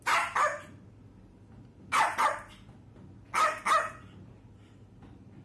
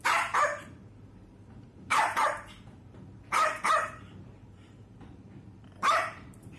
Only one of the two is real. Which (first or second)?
first